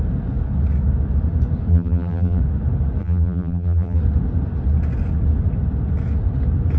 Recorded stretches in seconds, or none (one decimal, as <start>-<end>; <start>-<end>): 0.0-1.7; 2.4-3.0; 4.0-6.8